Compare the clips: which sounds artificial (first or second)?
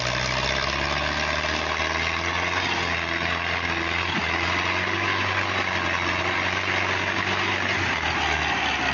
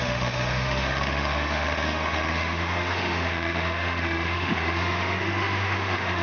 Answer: second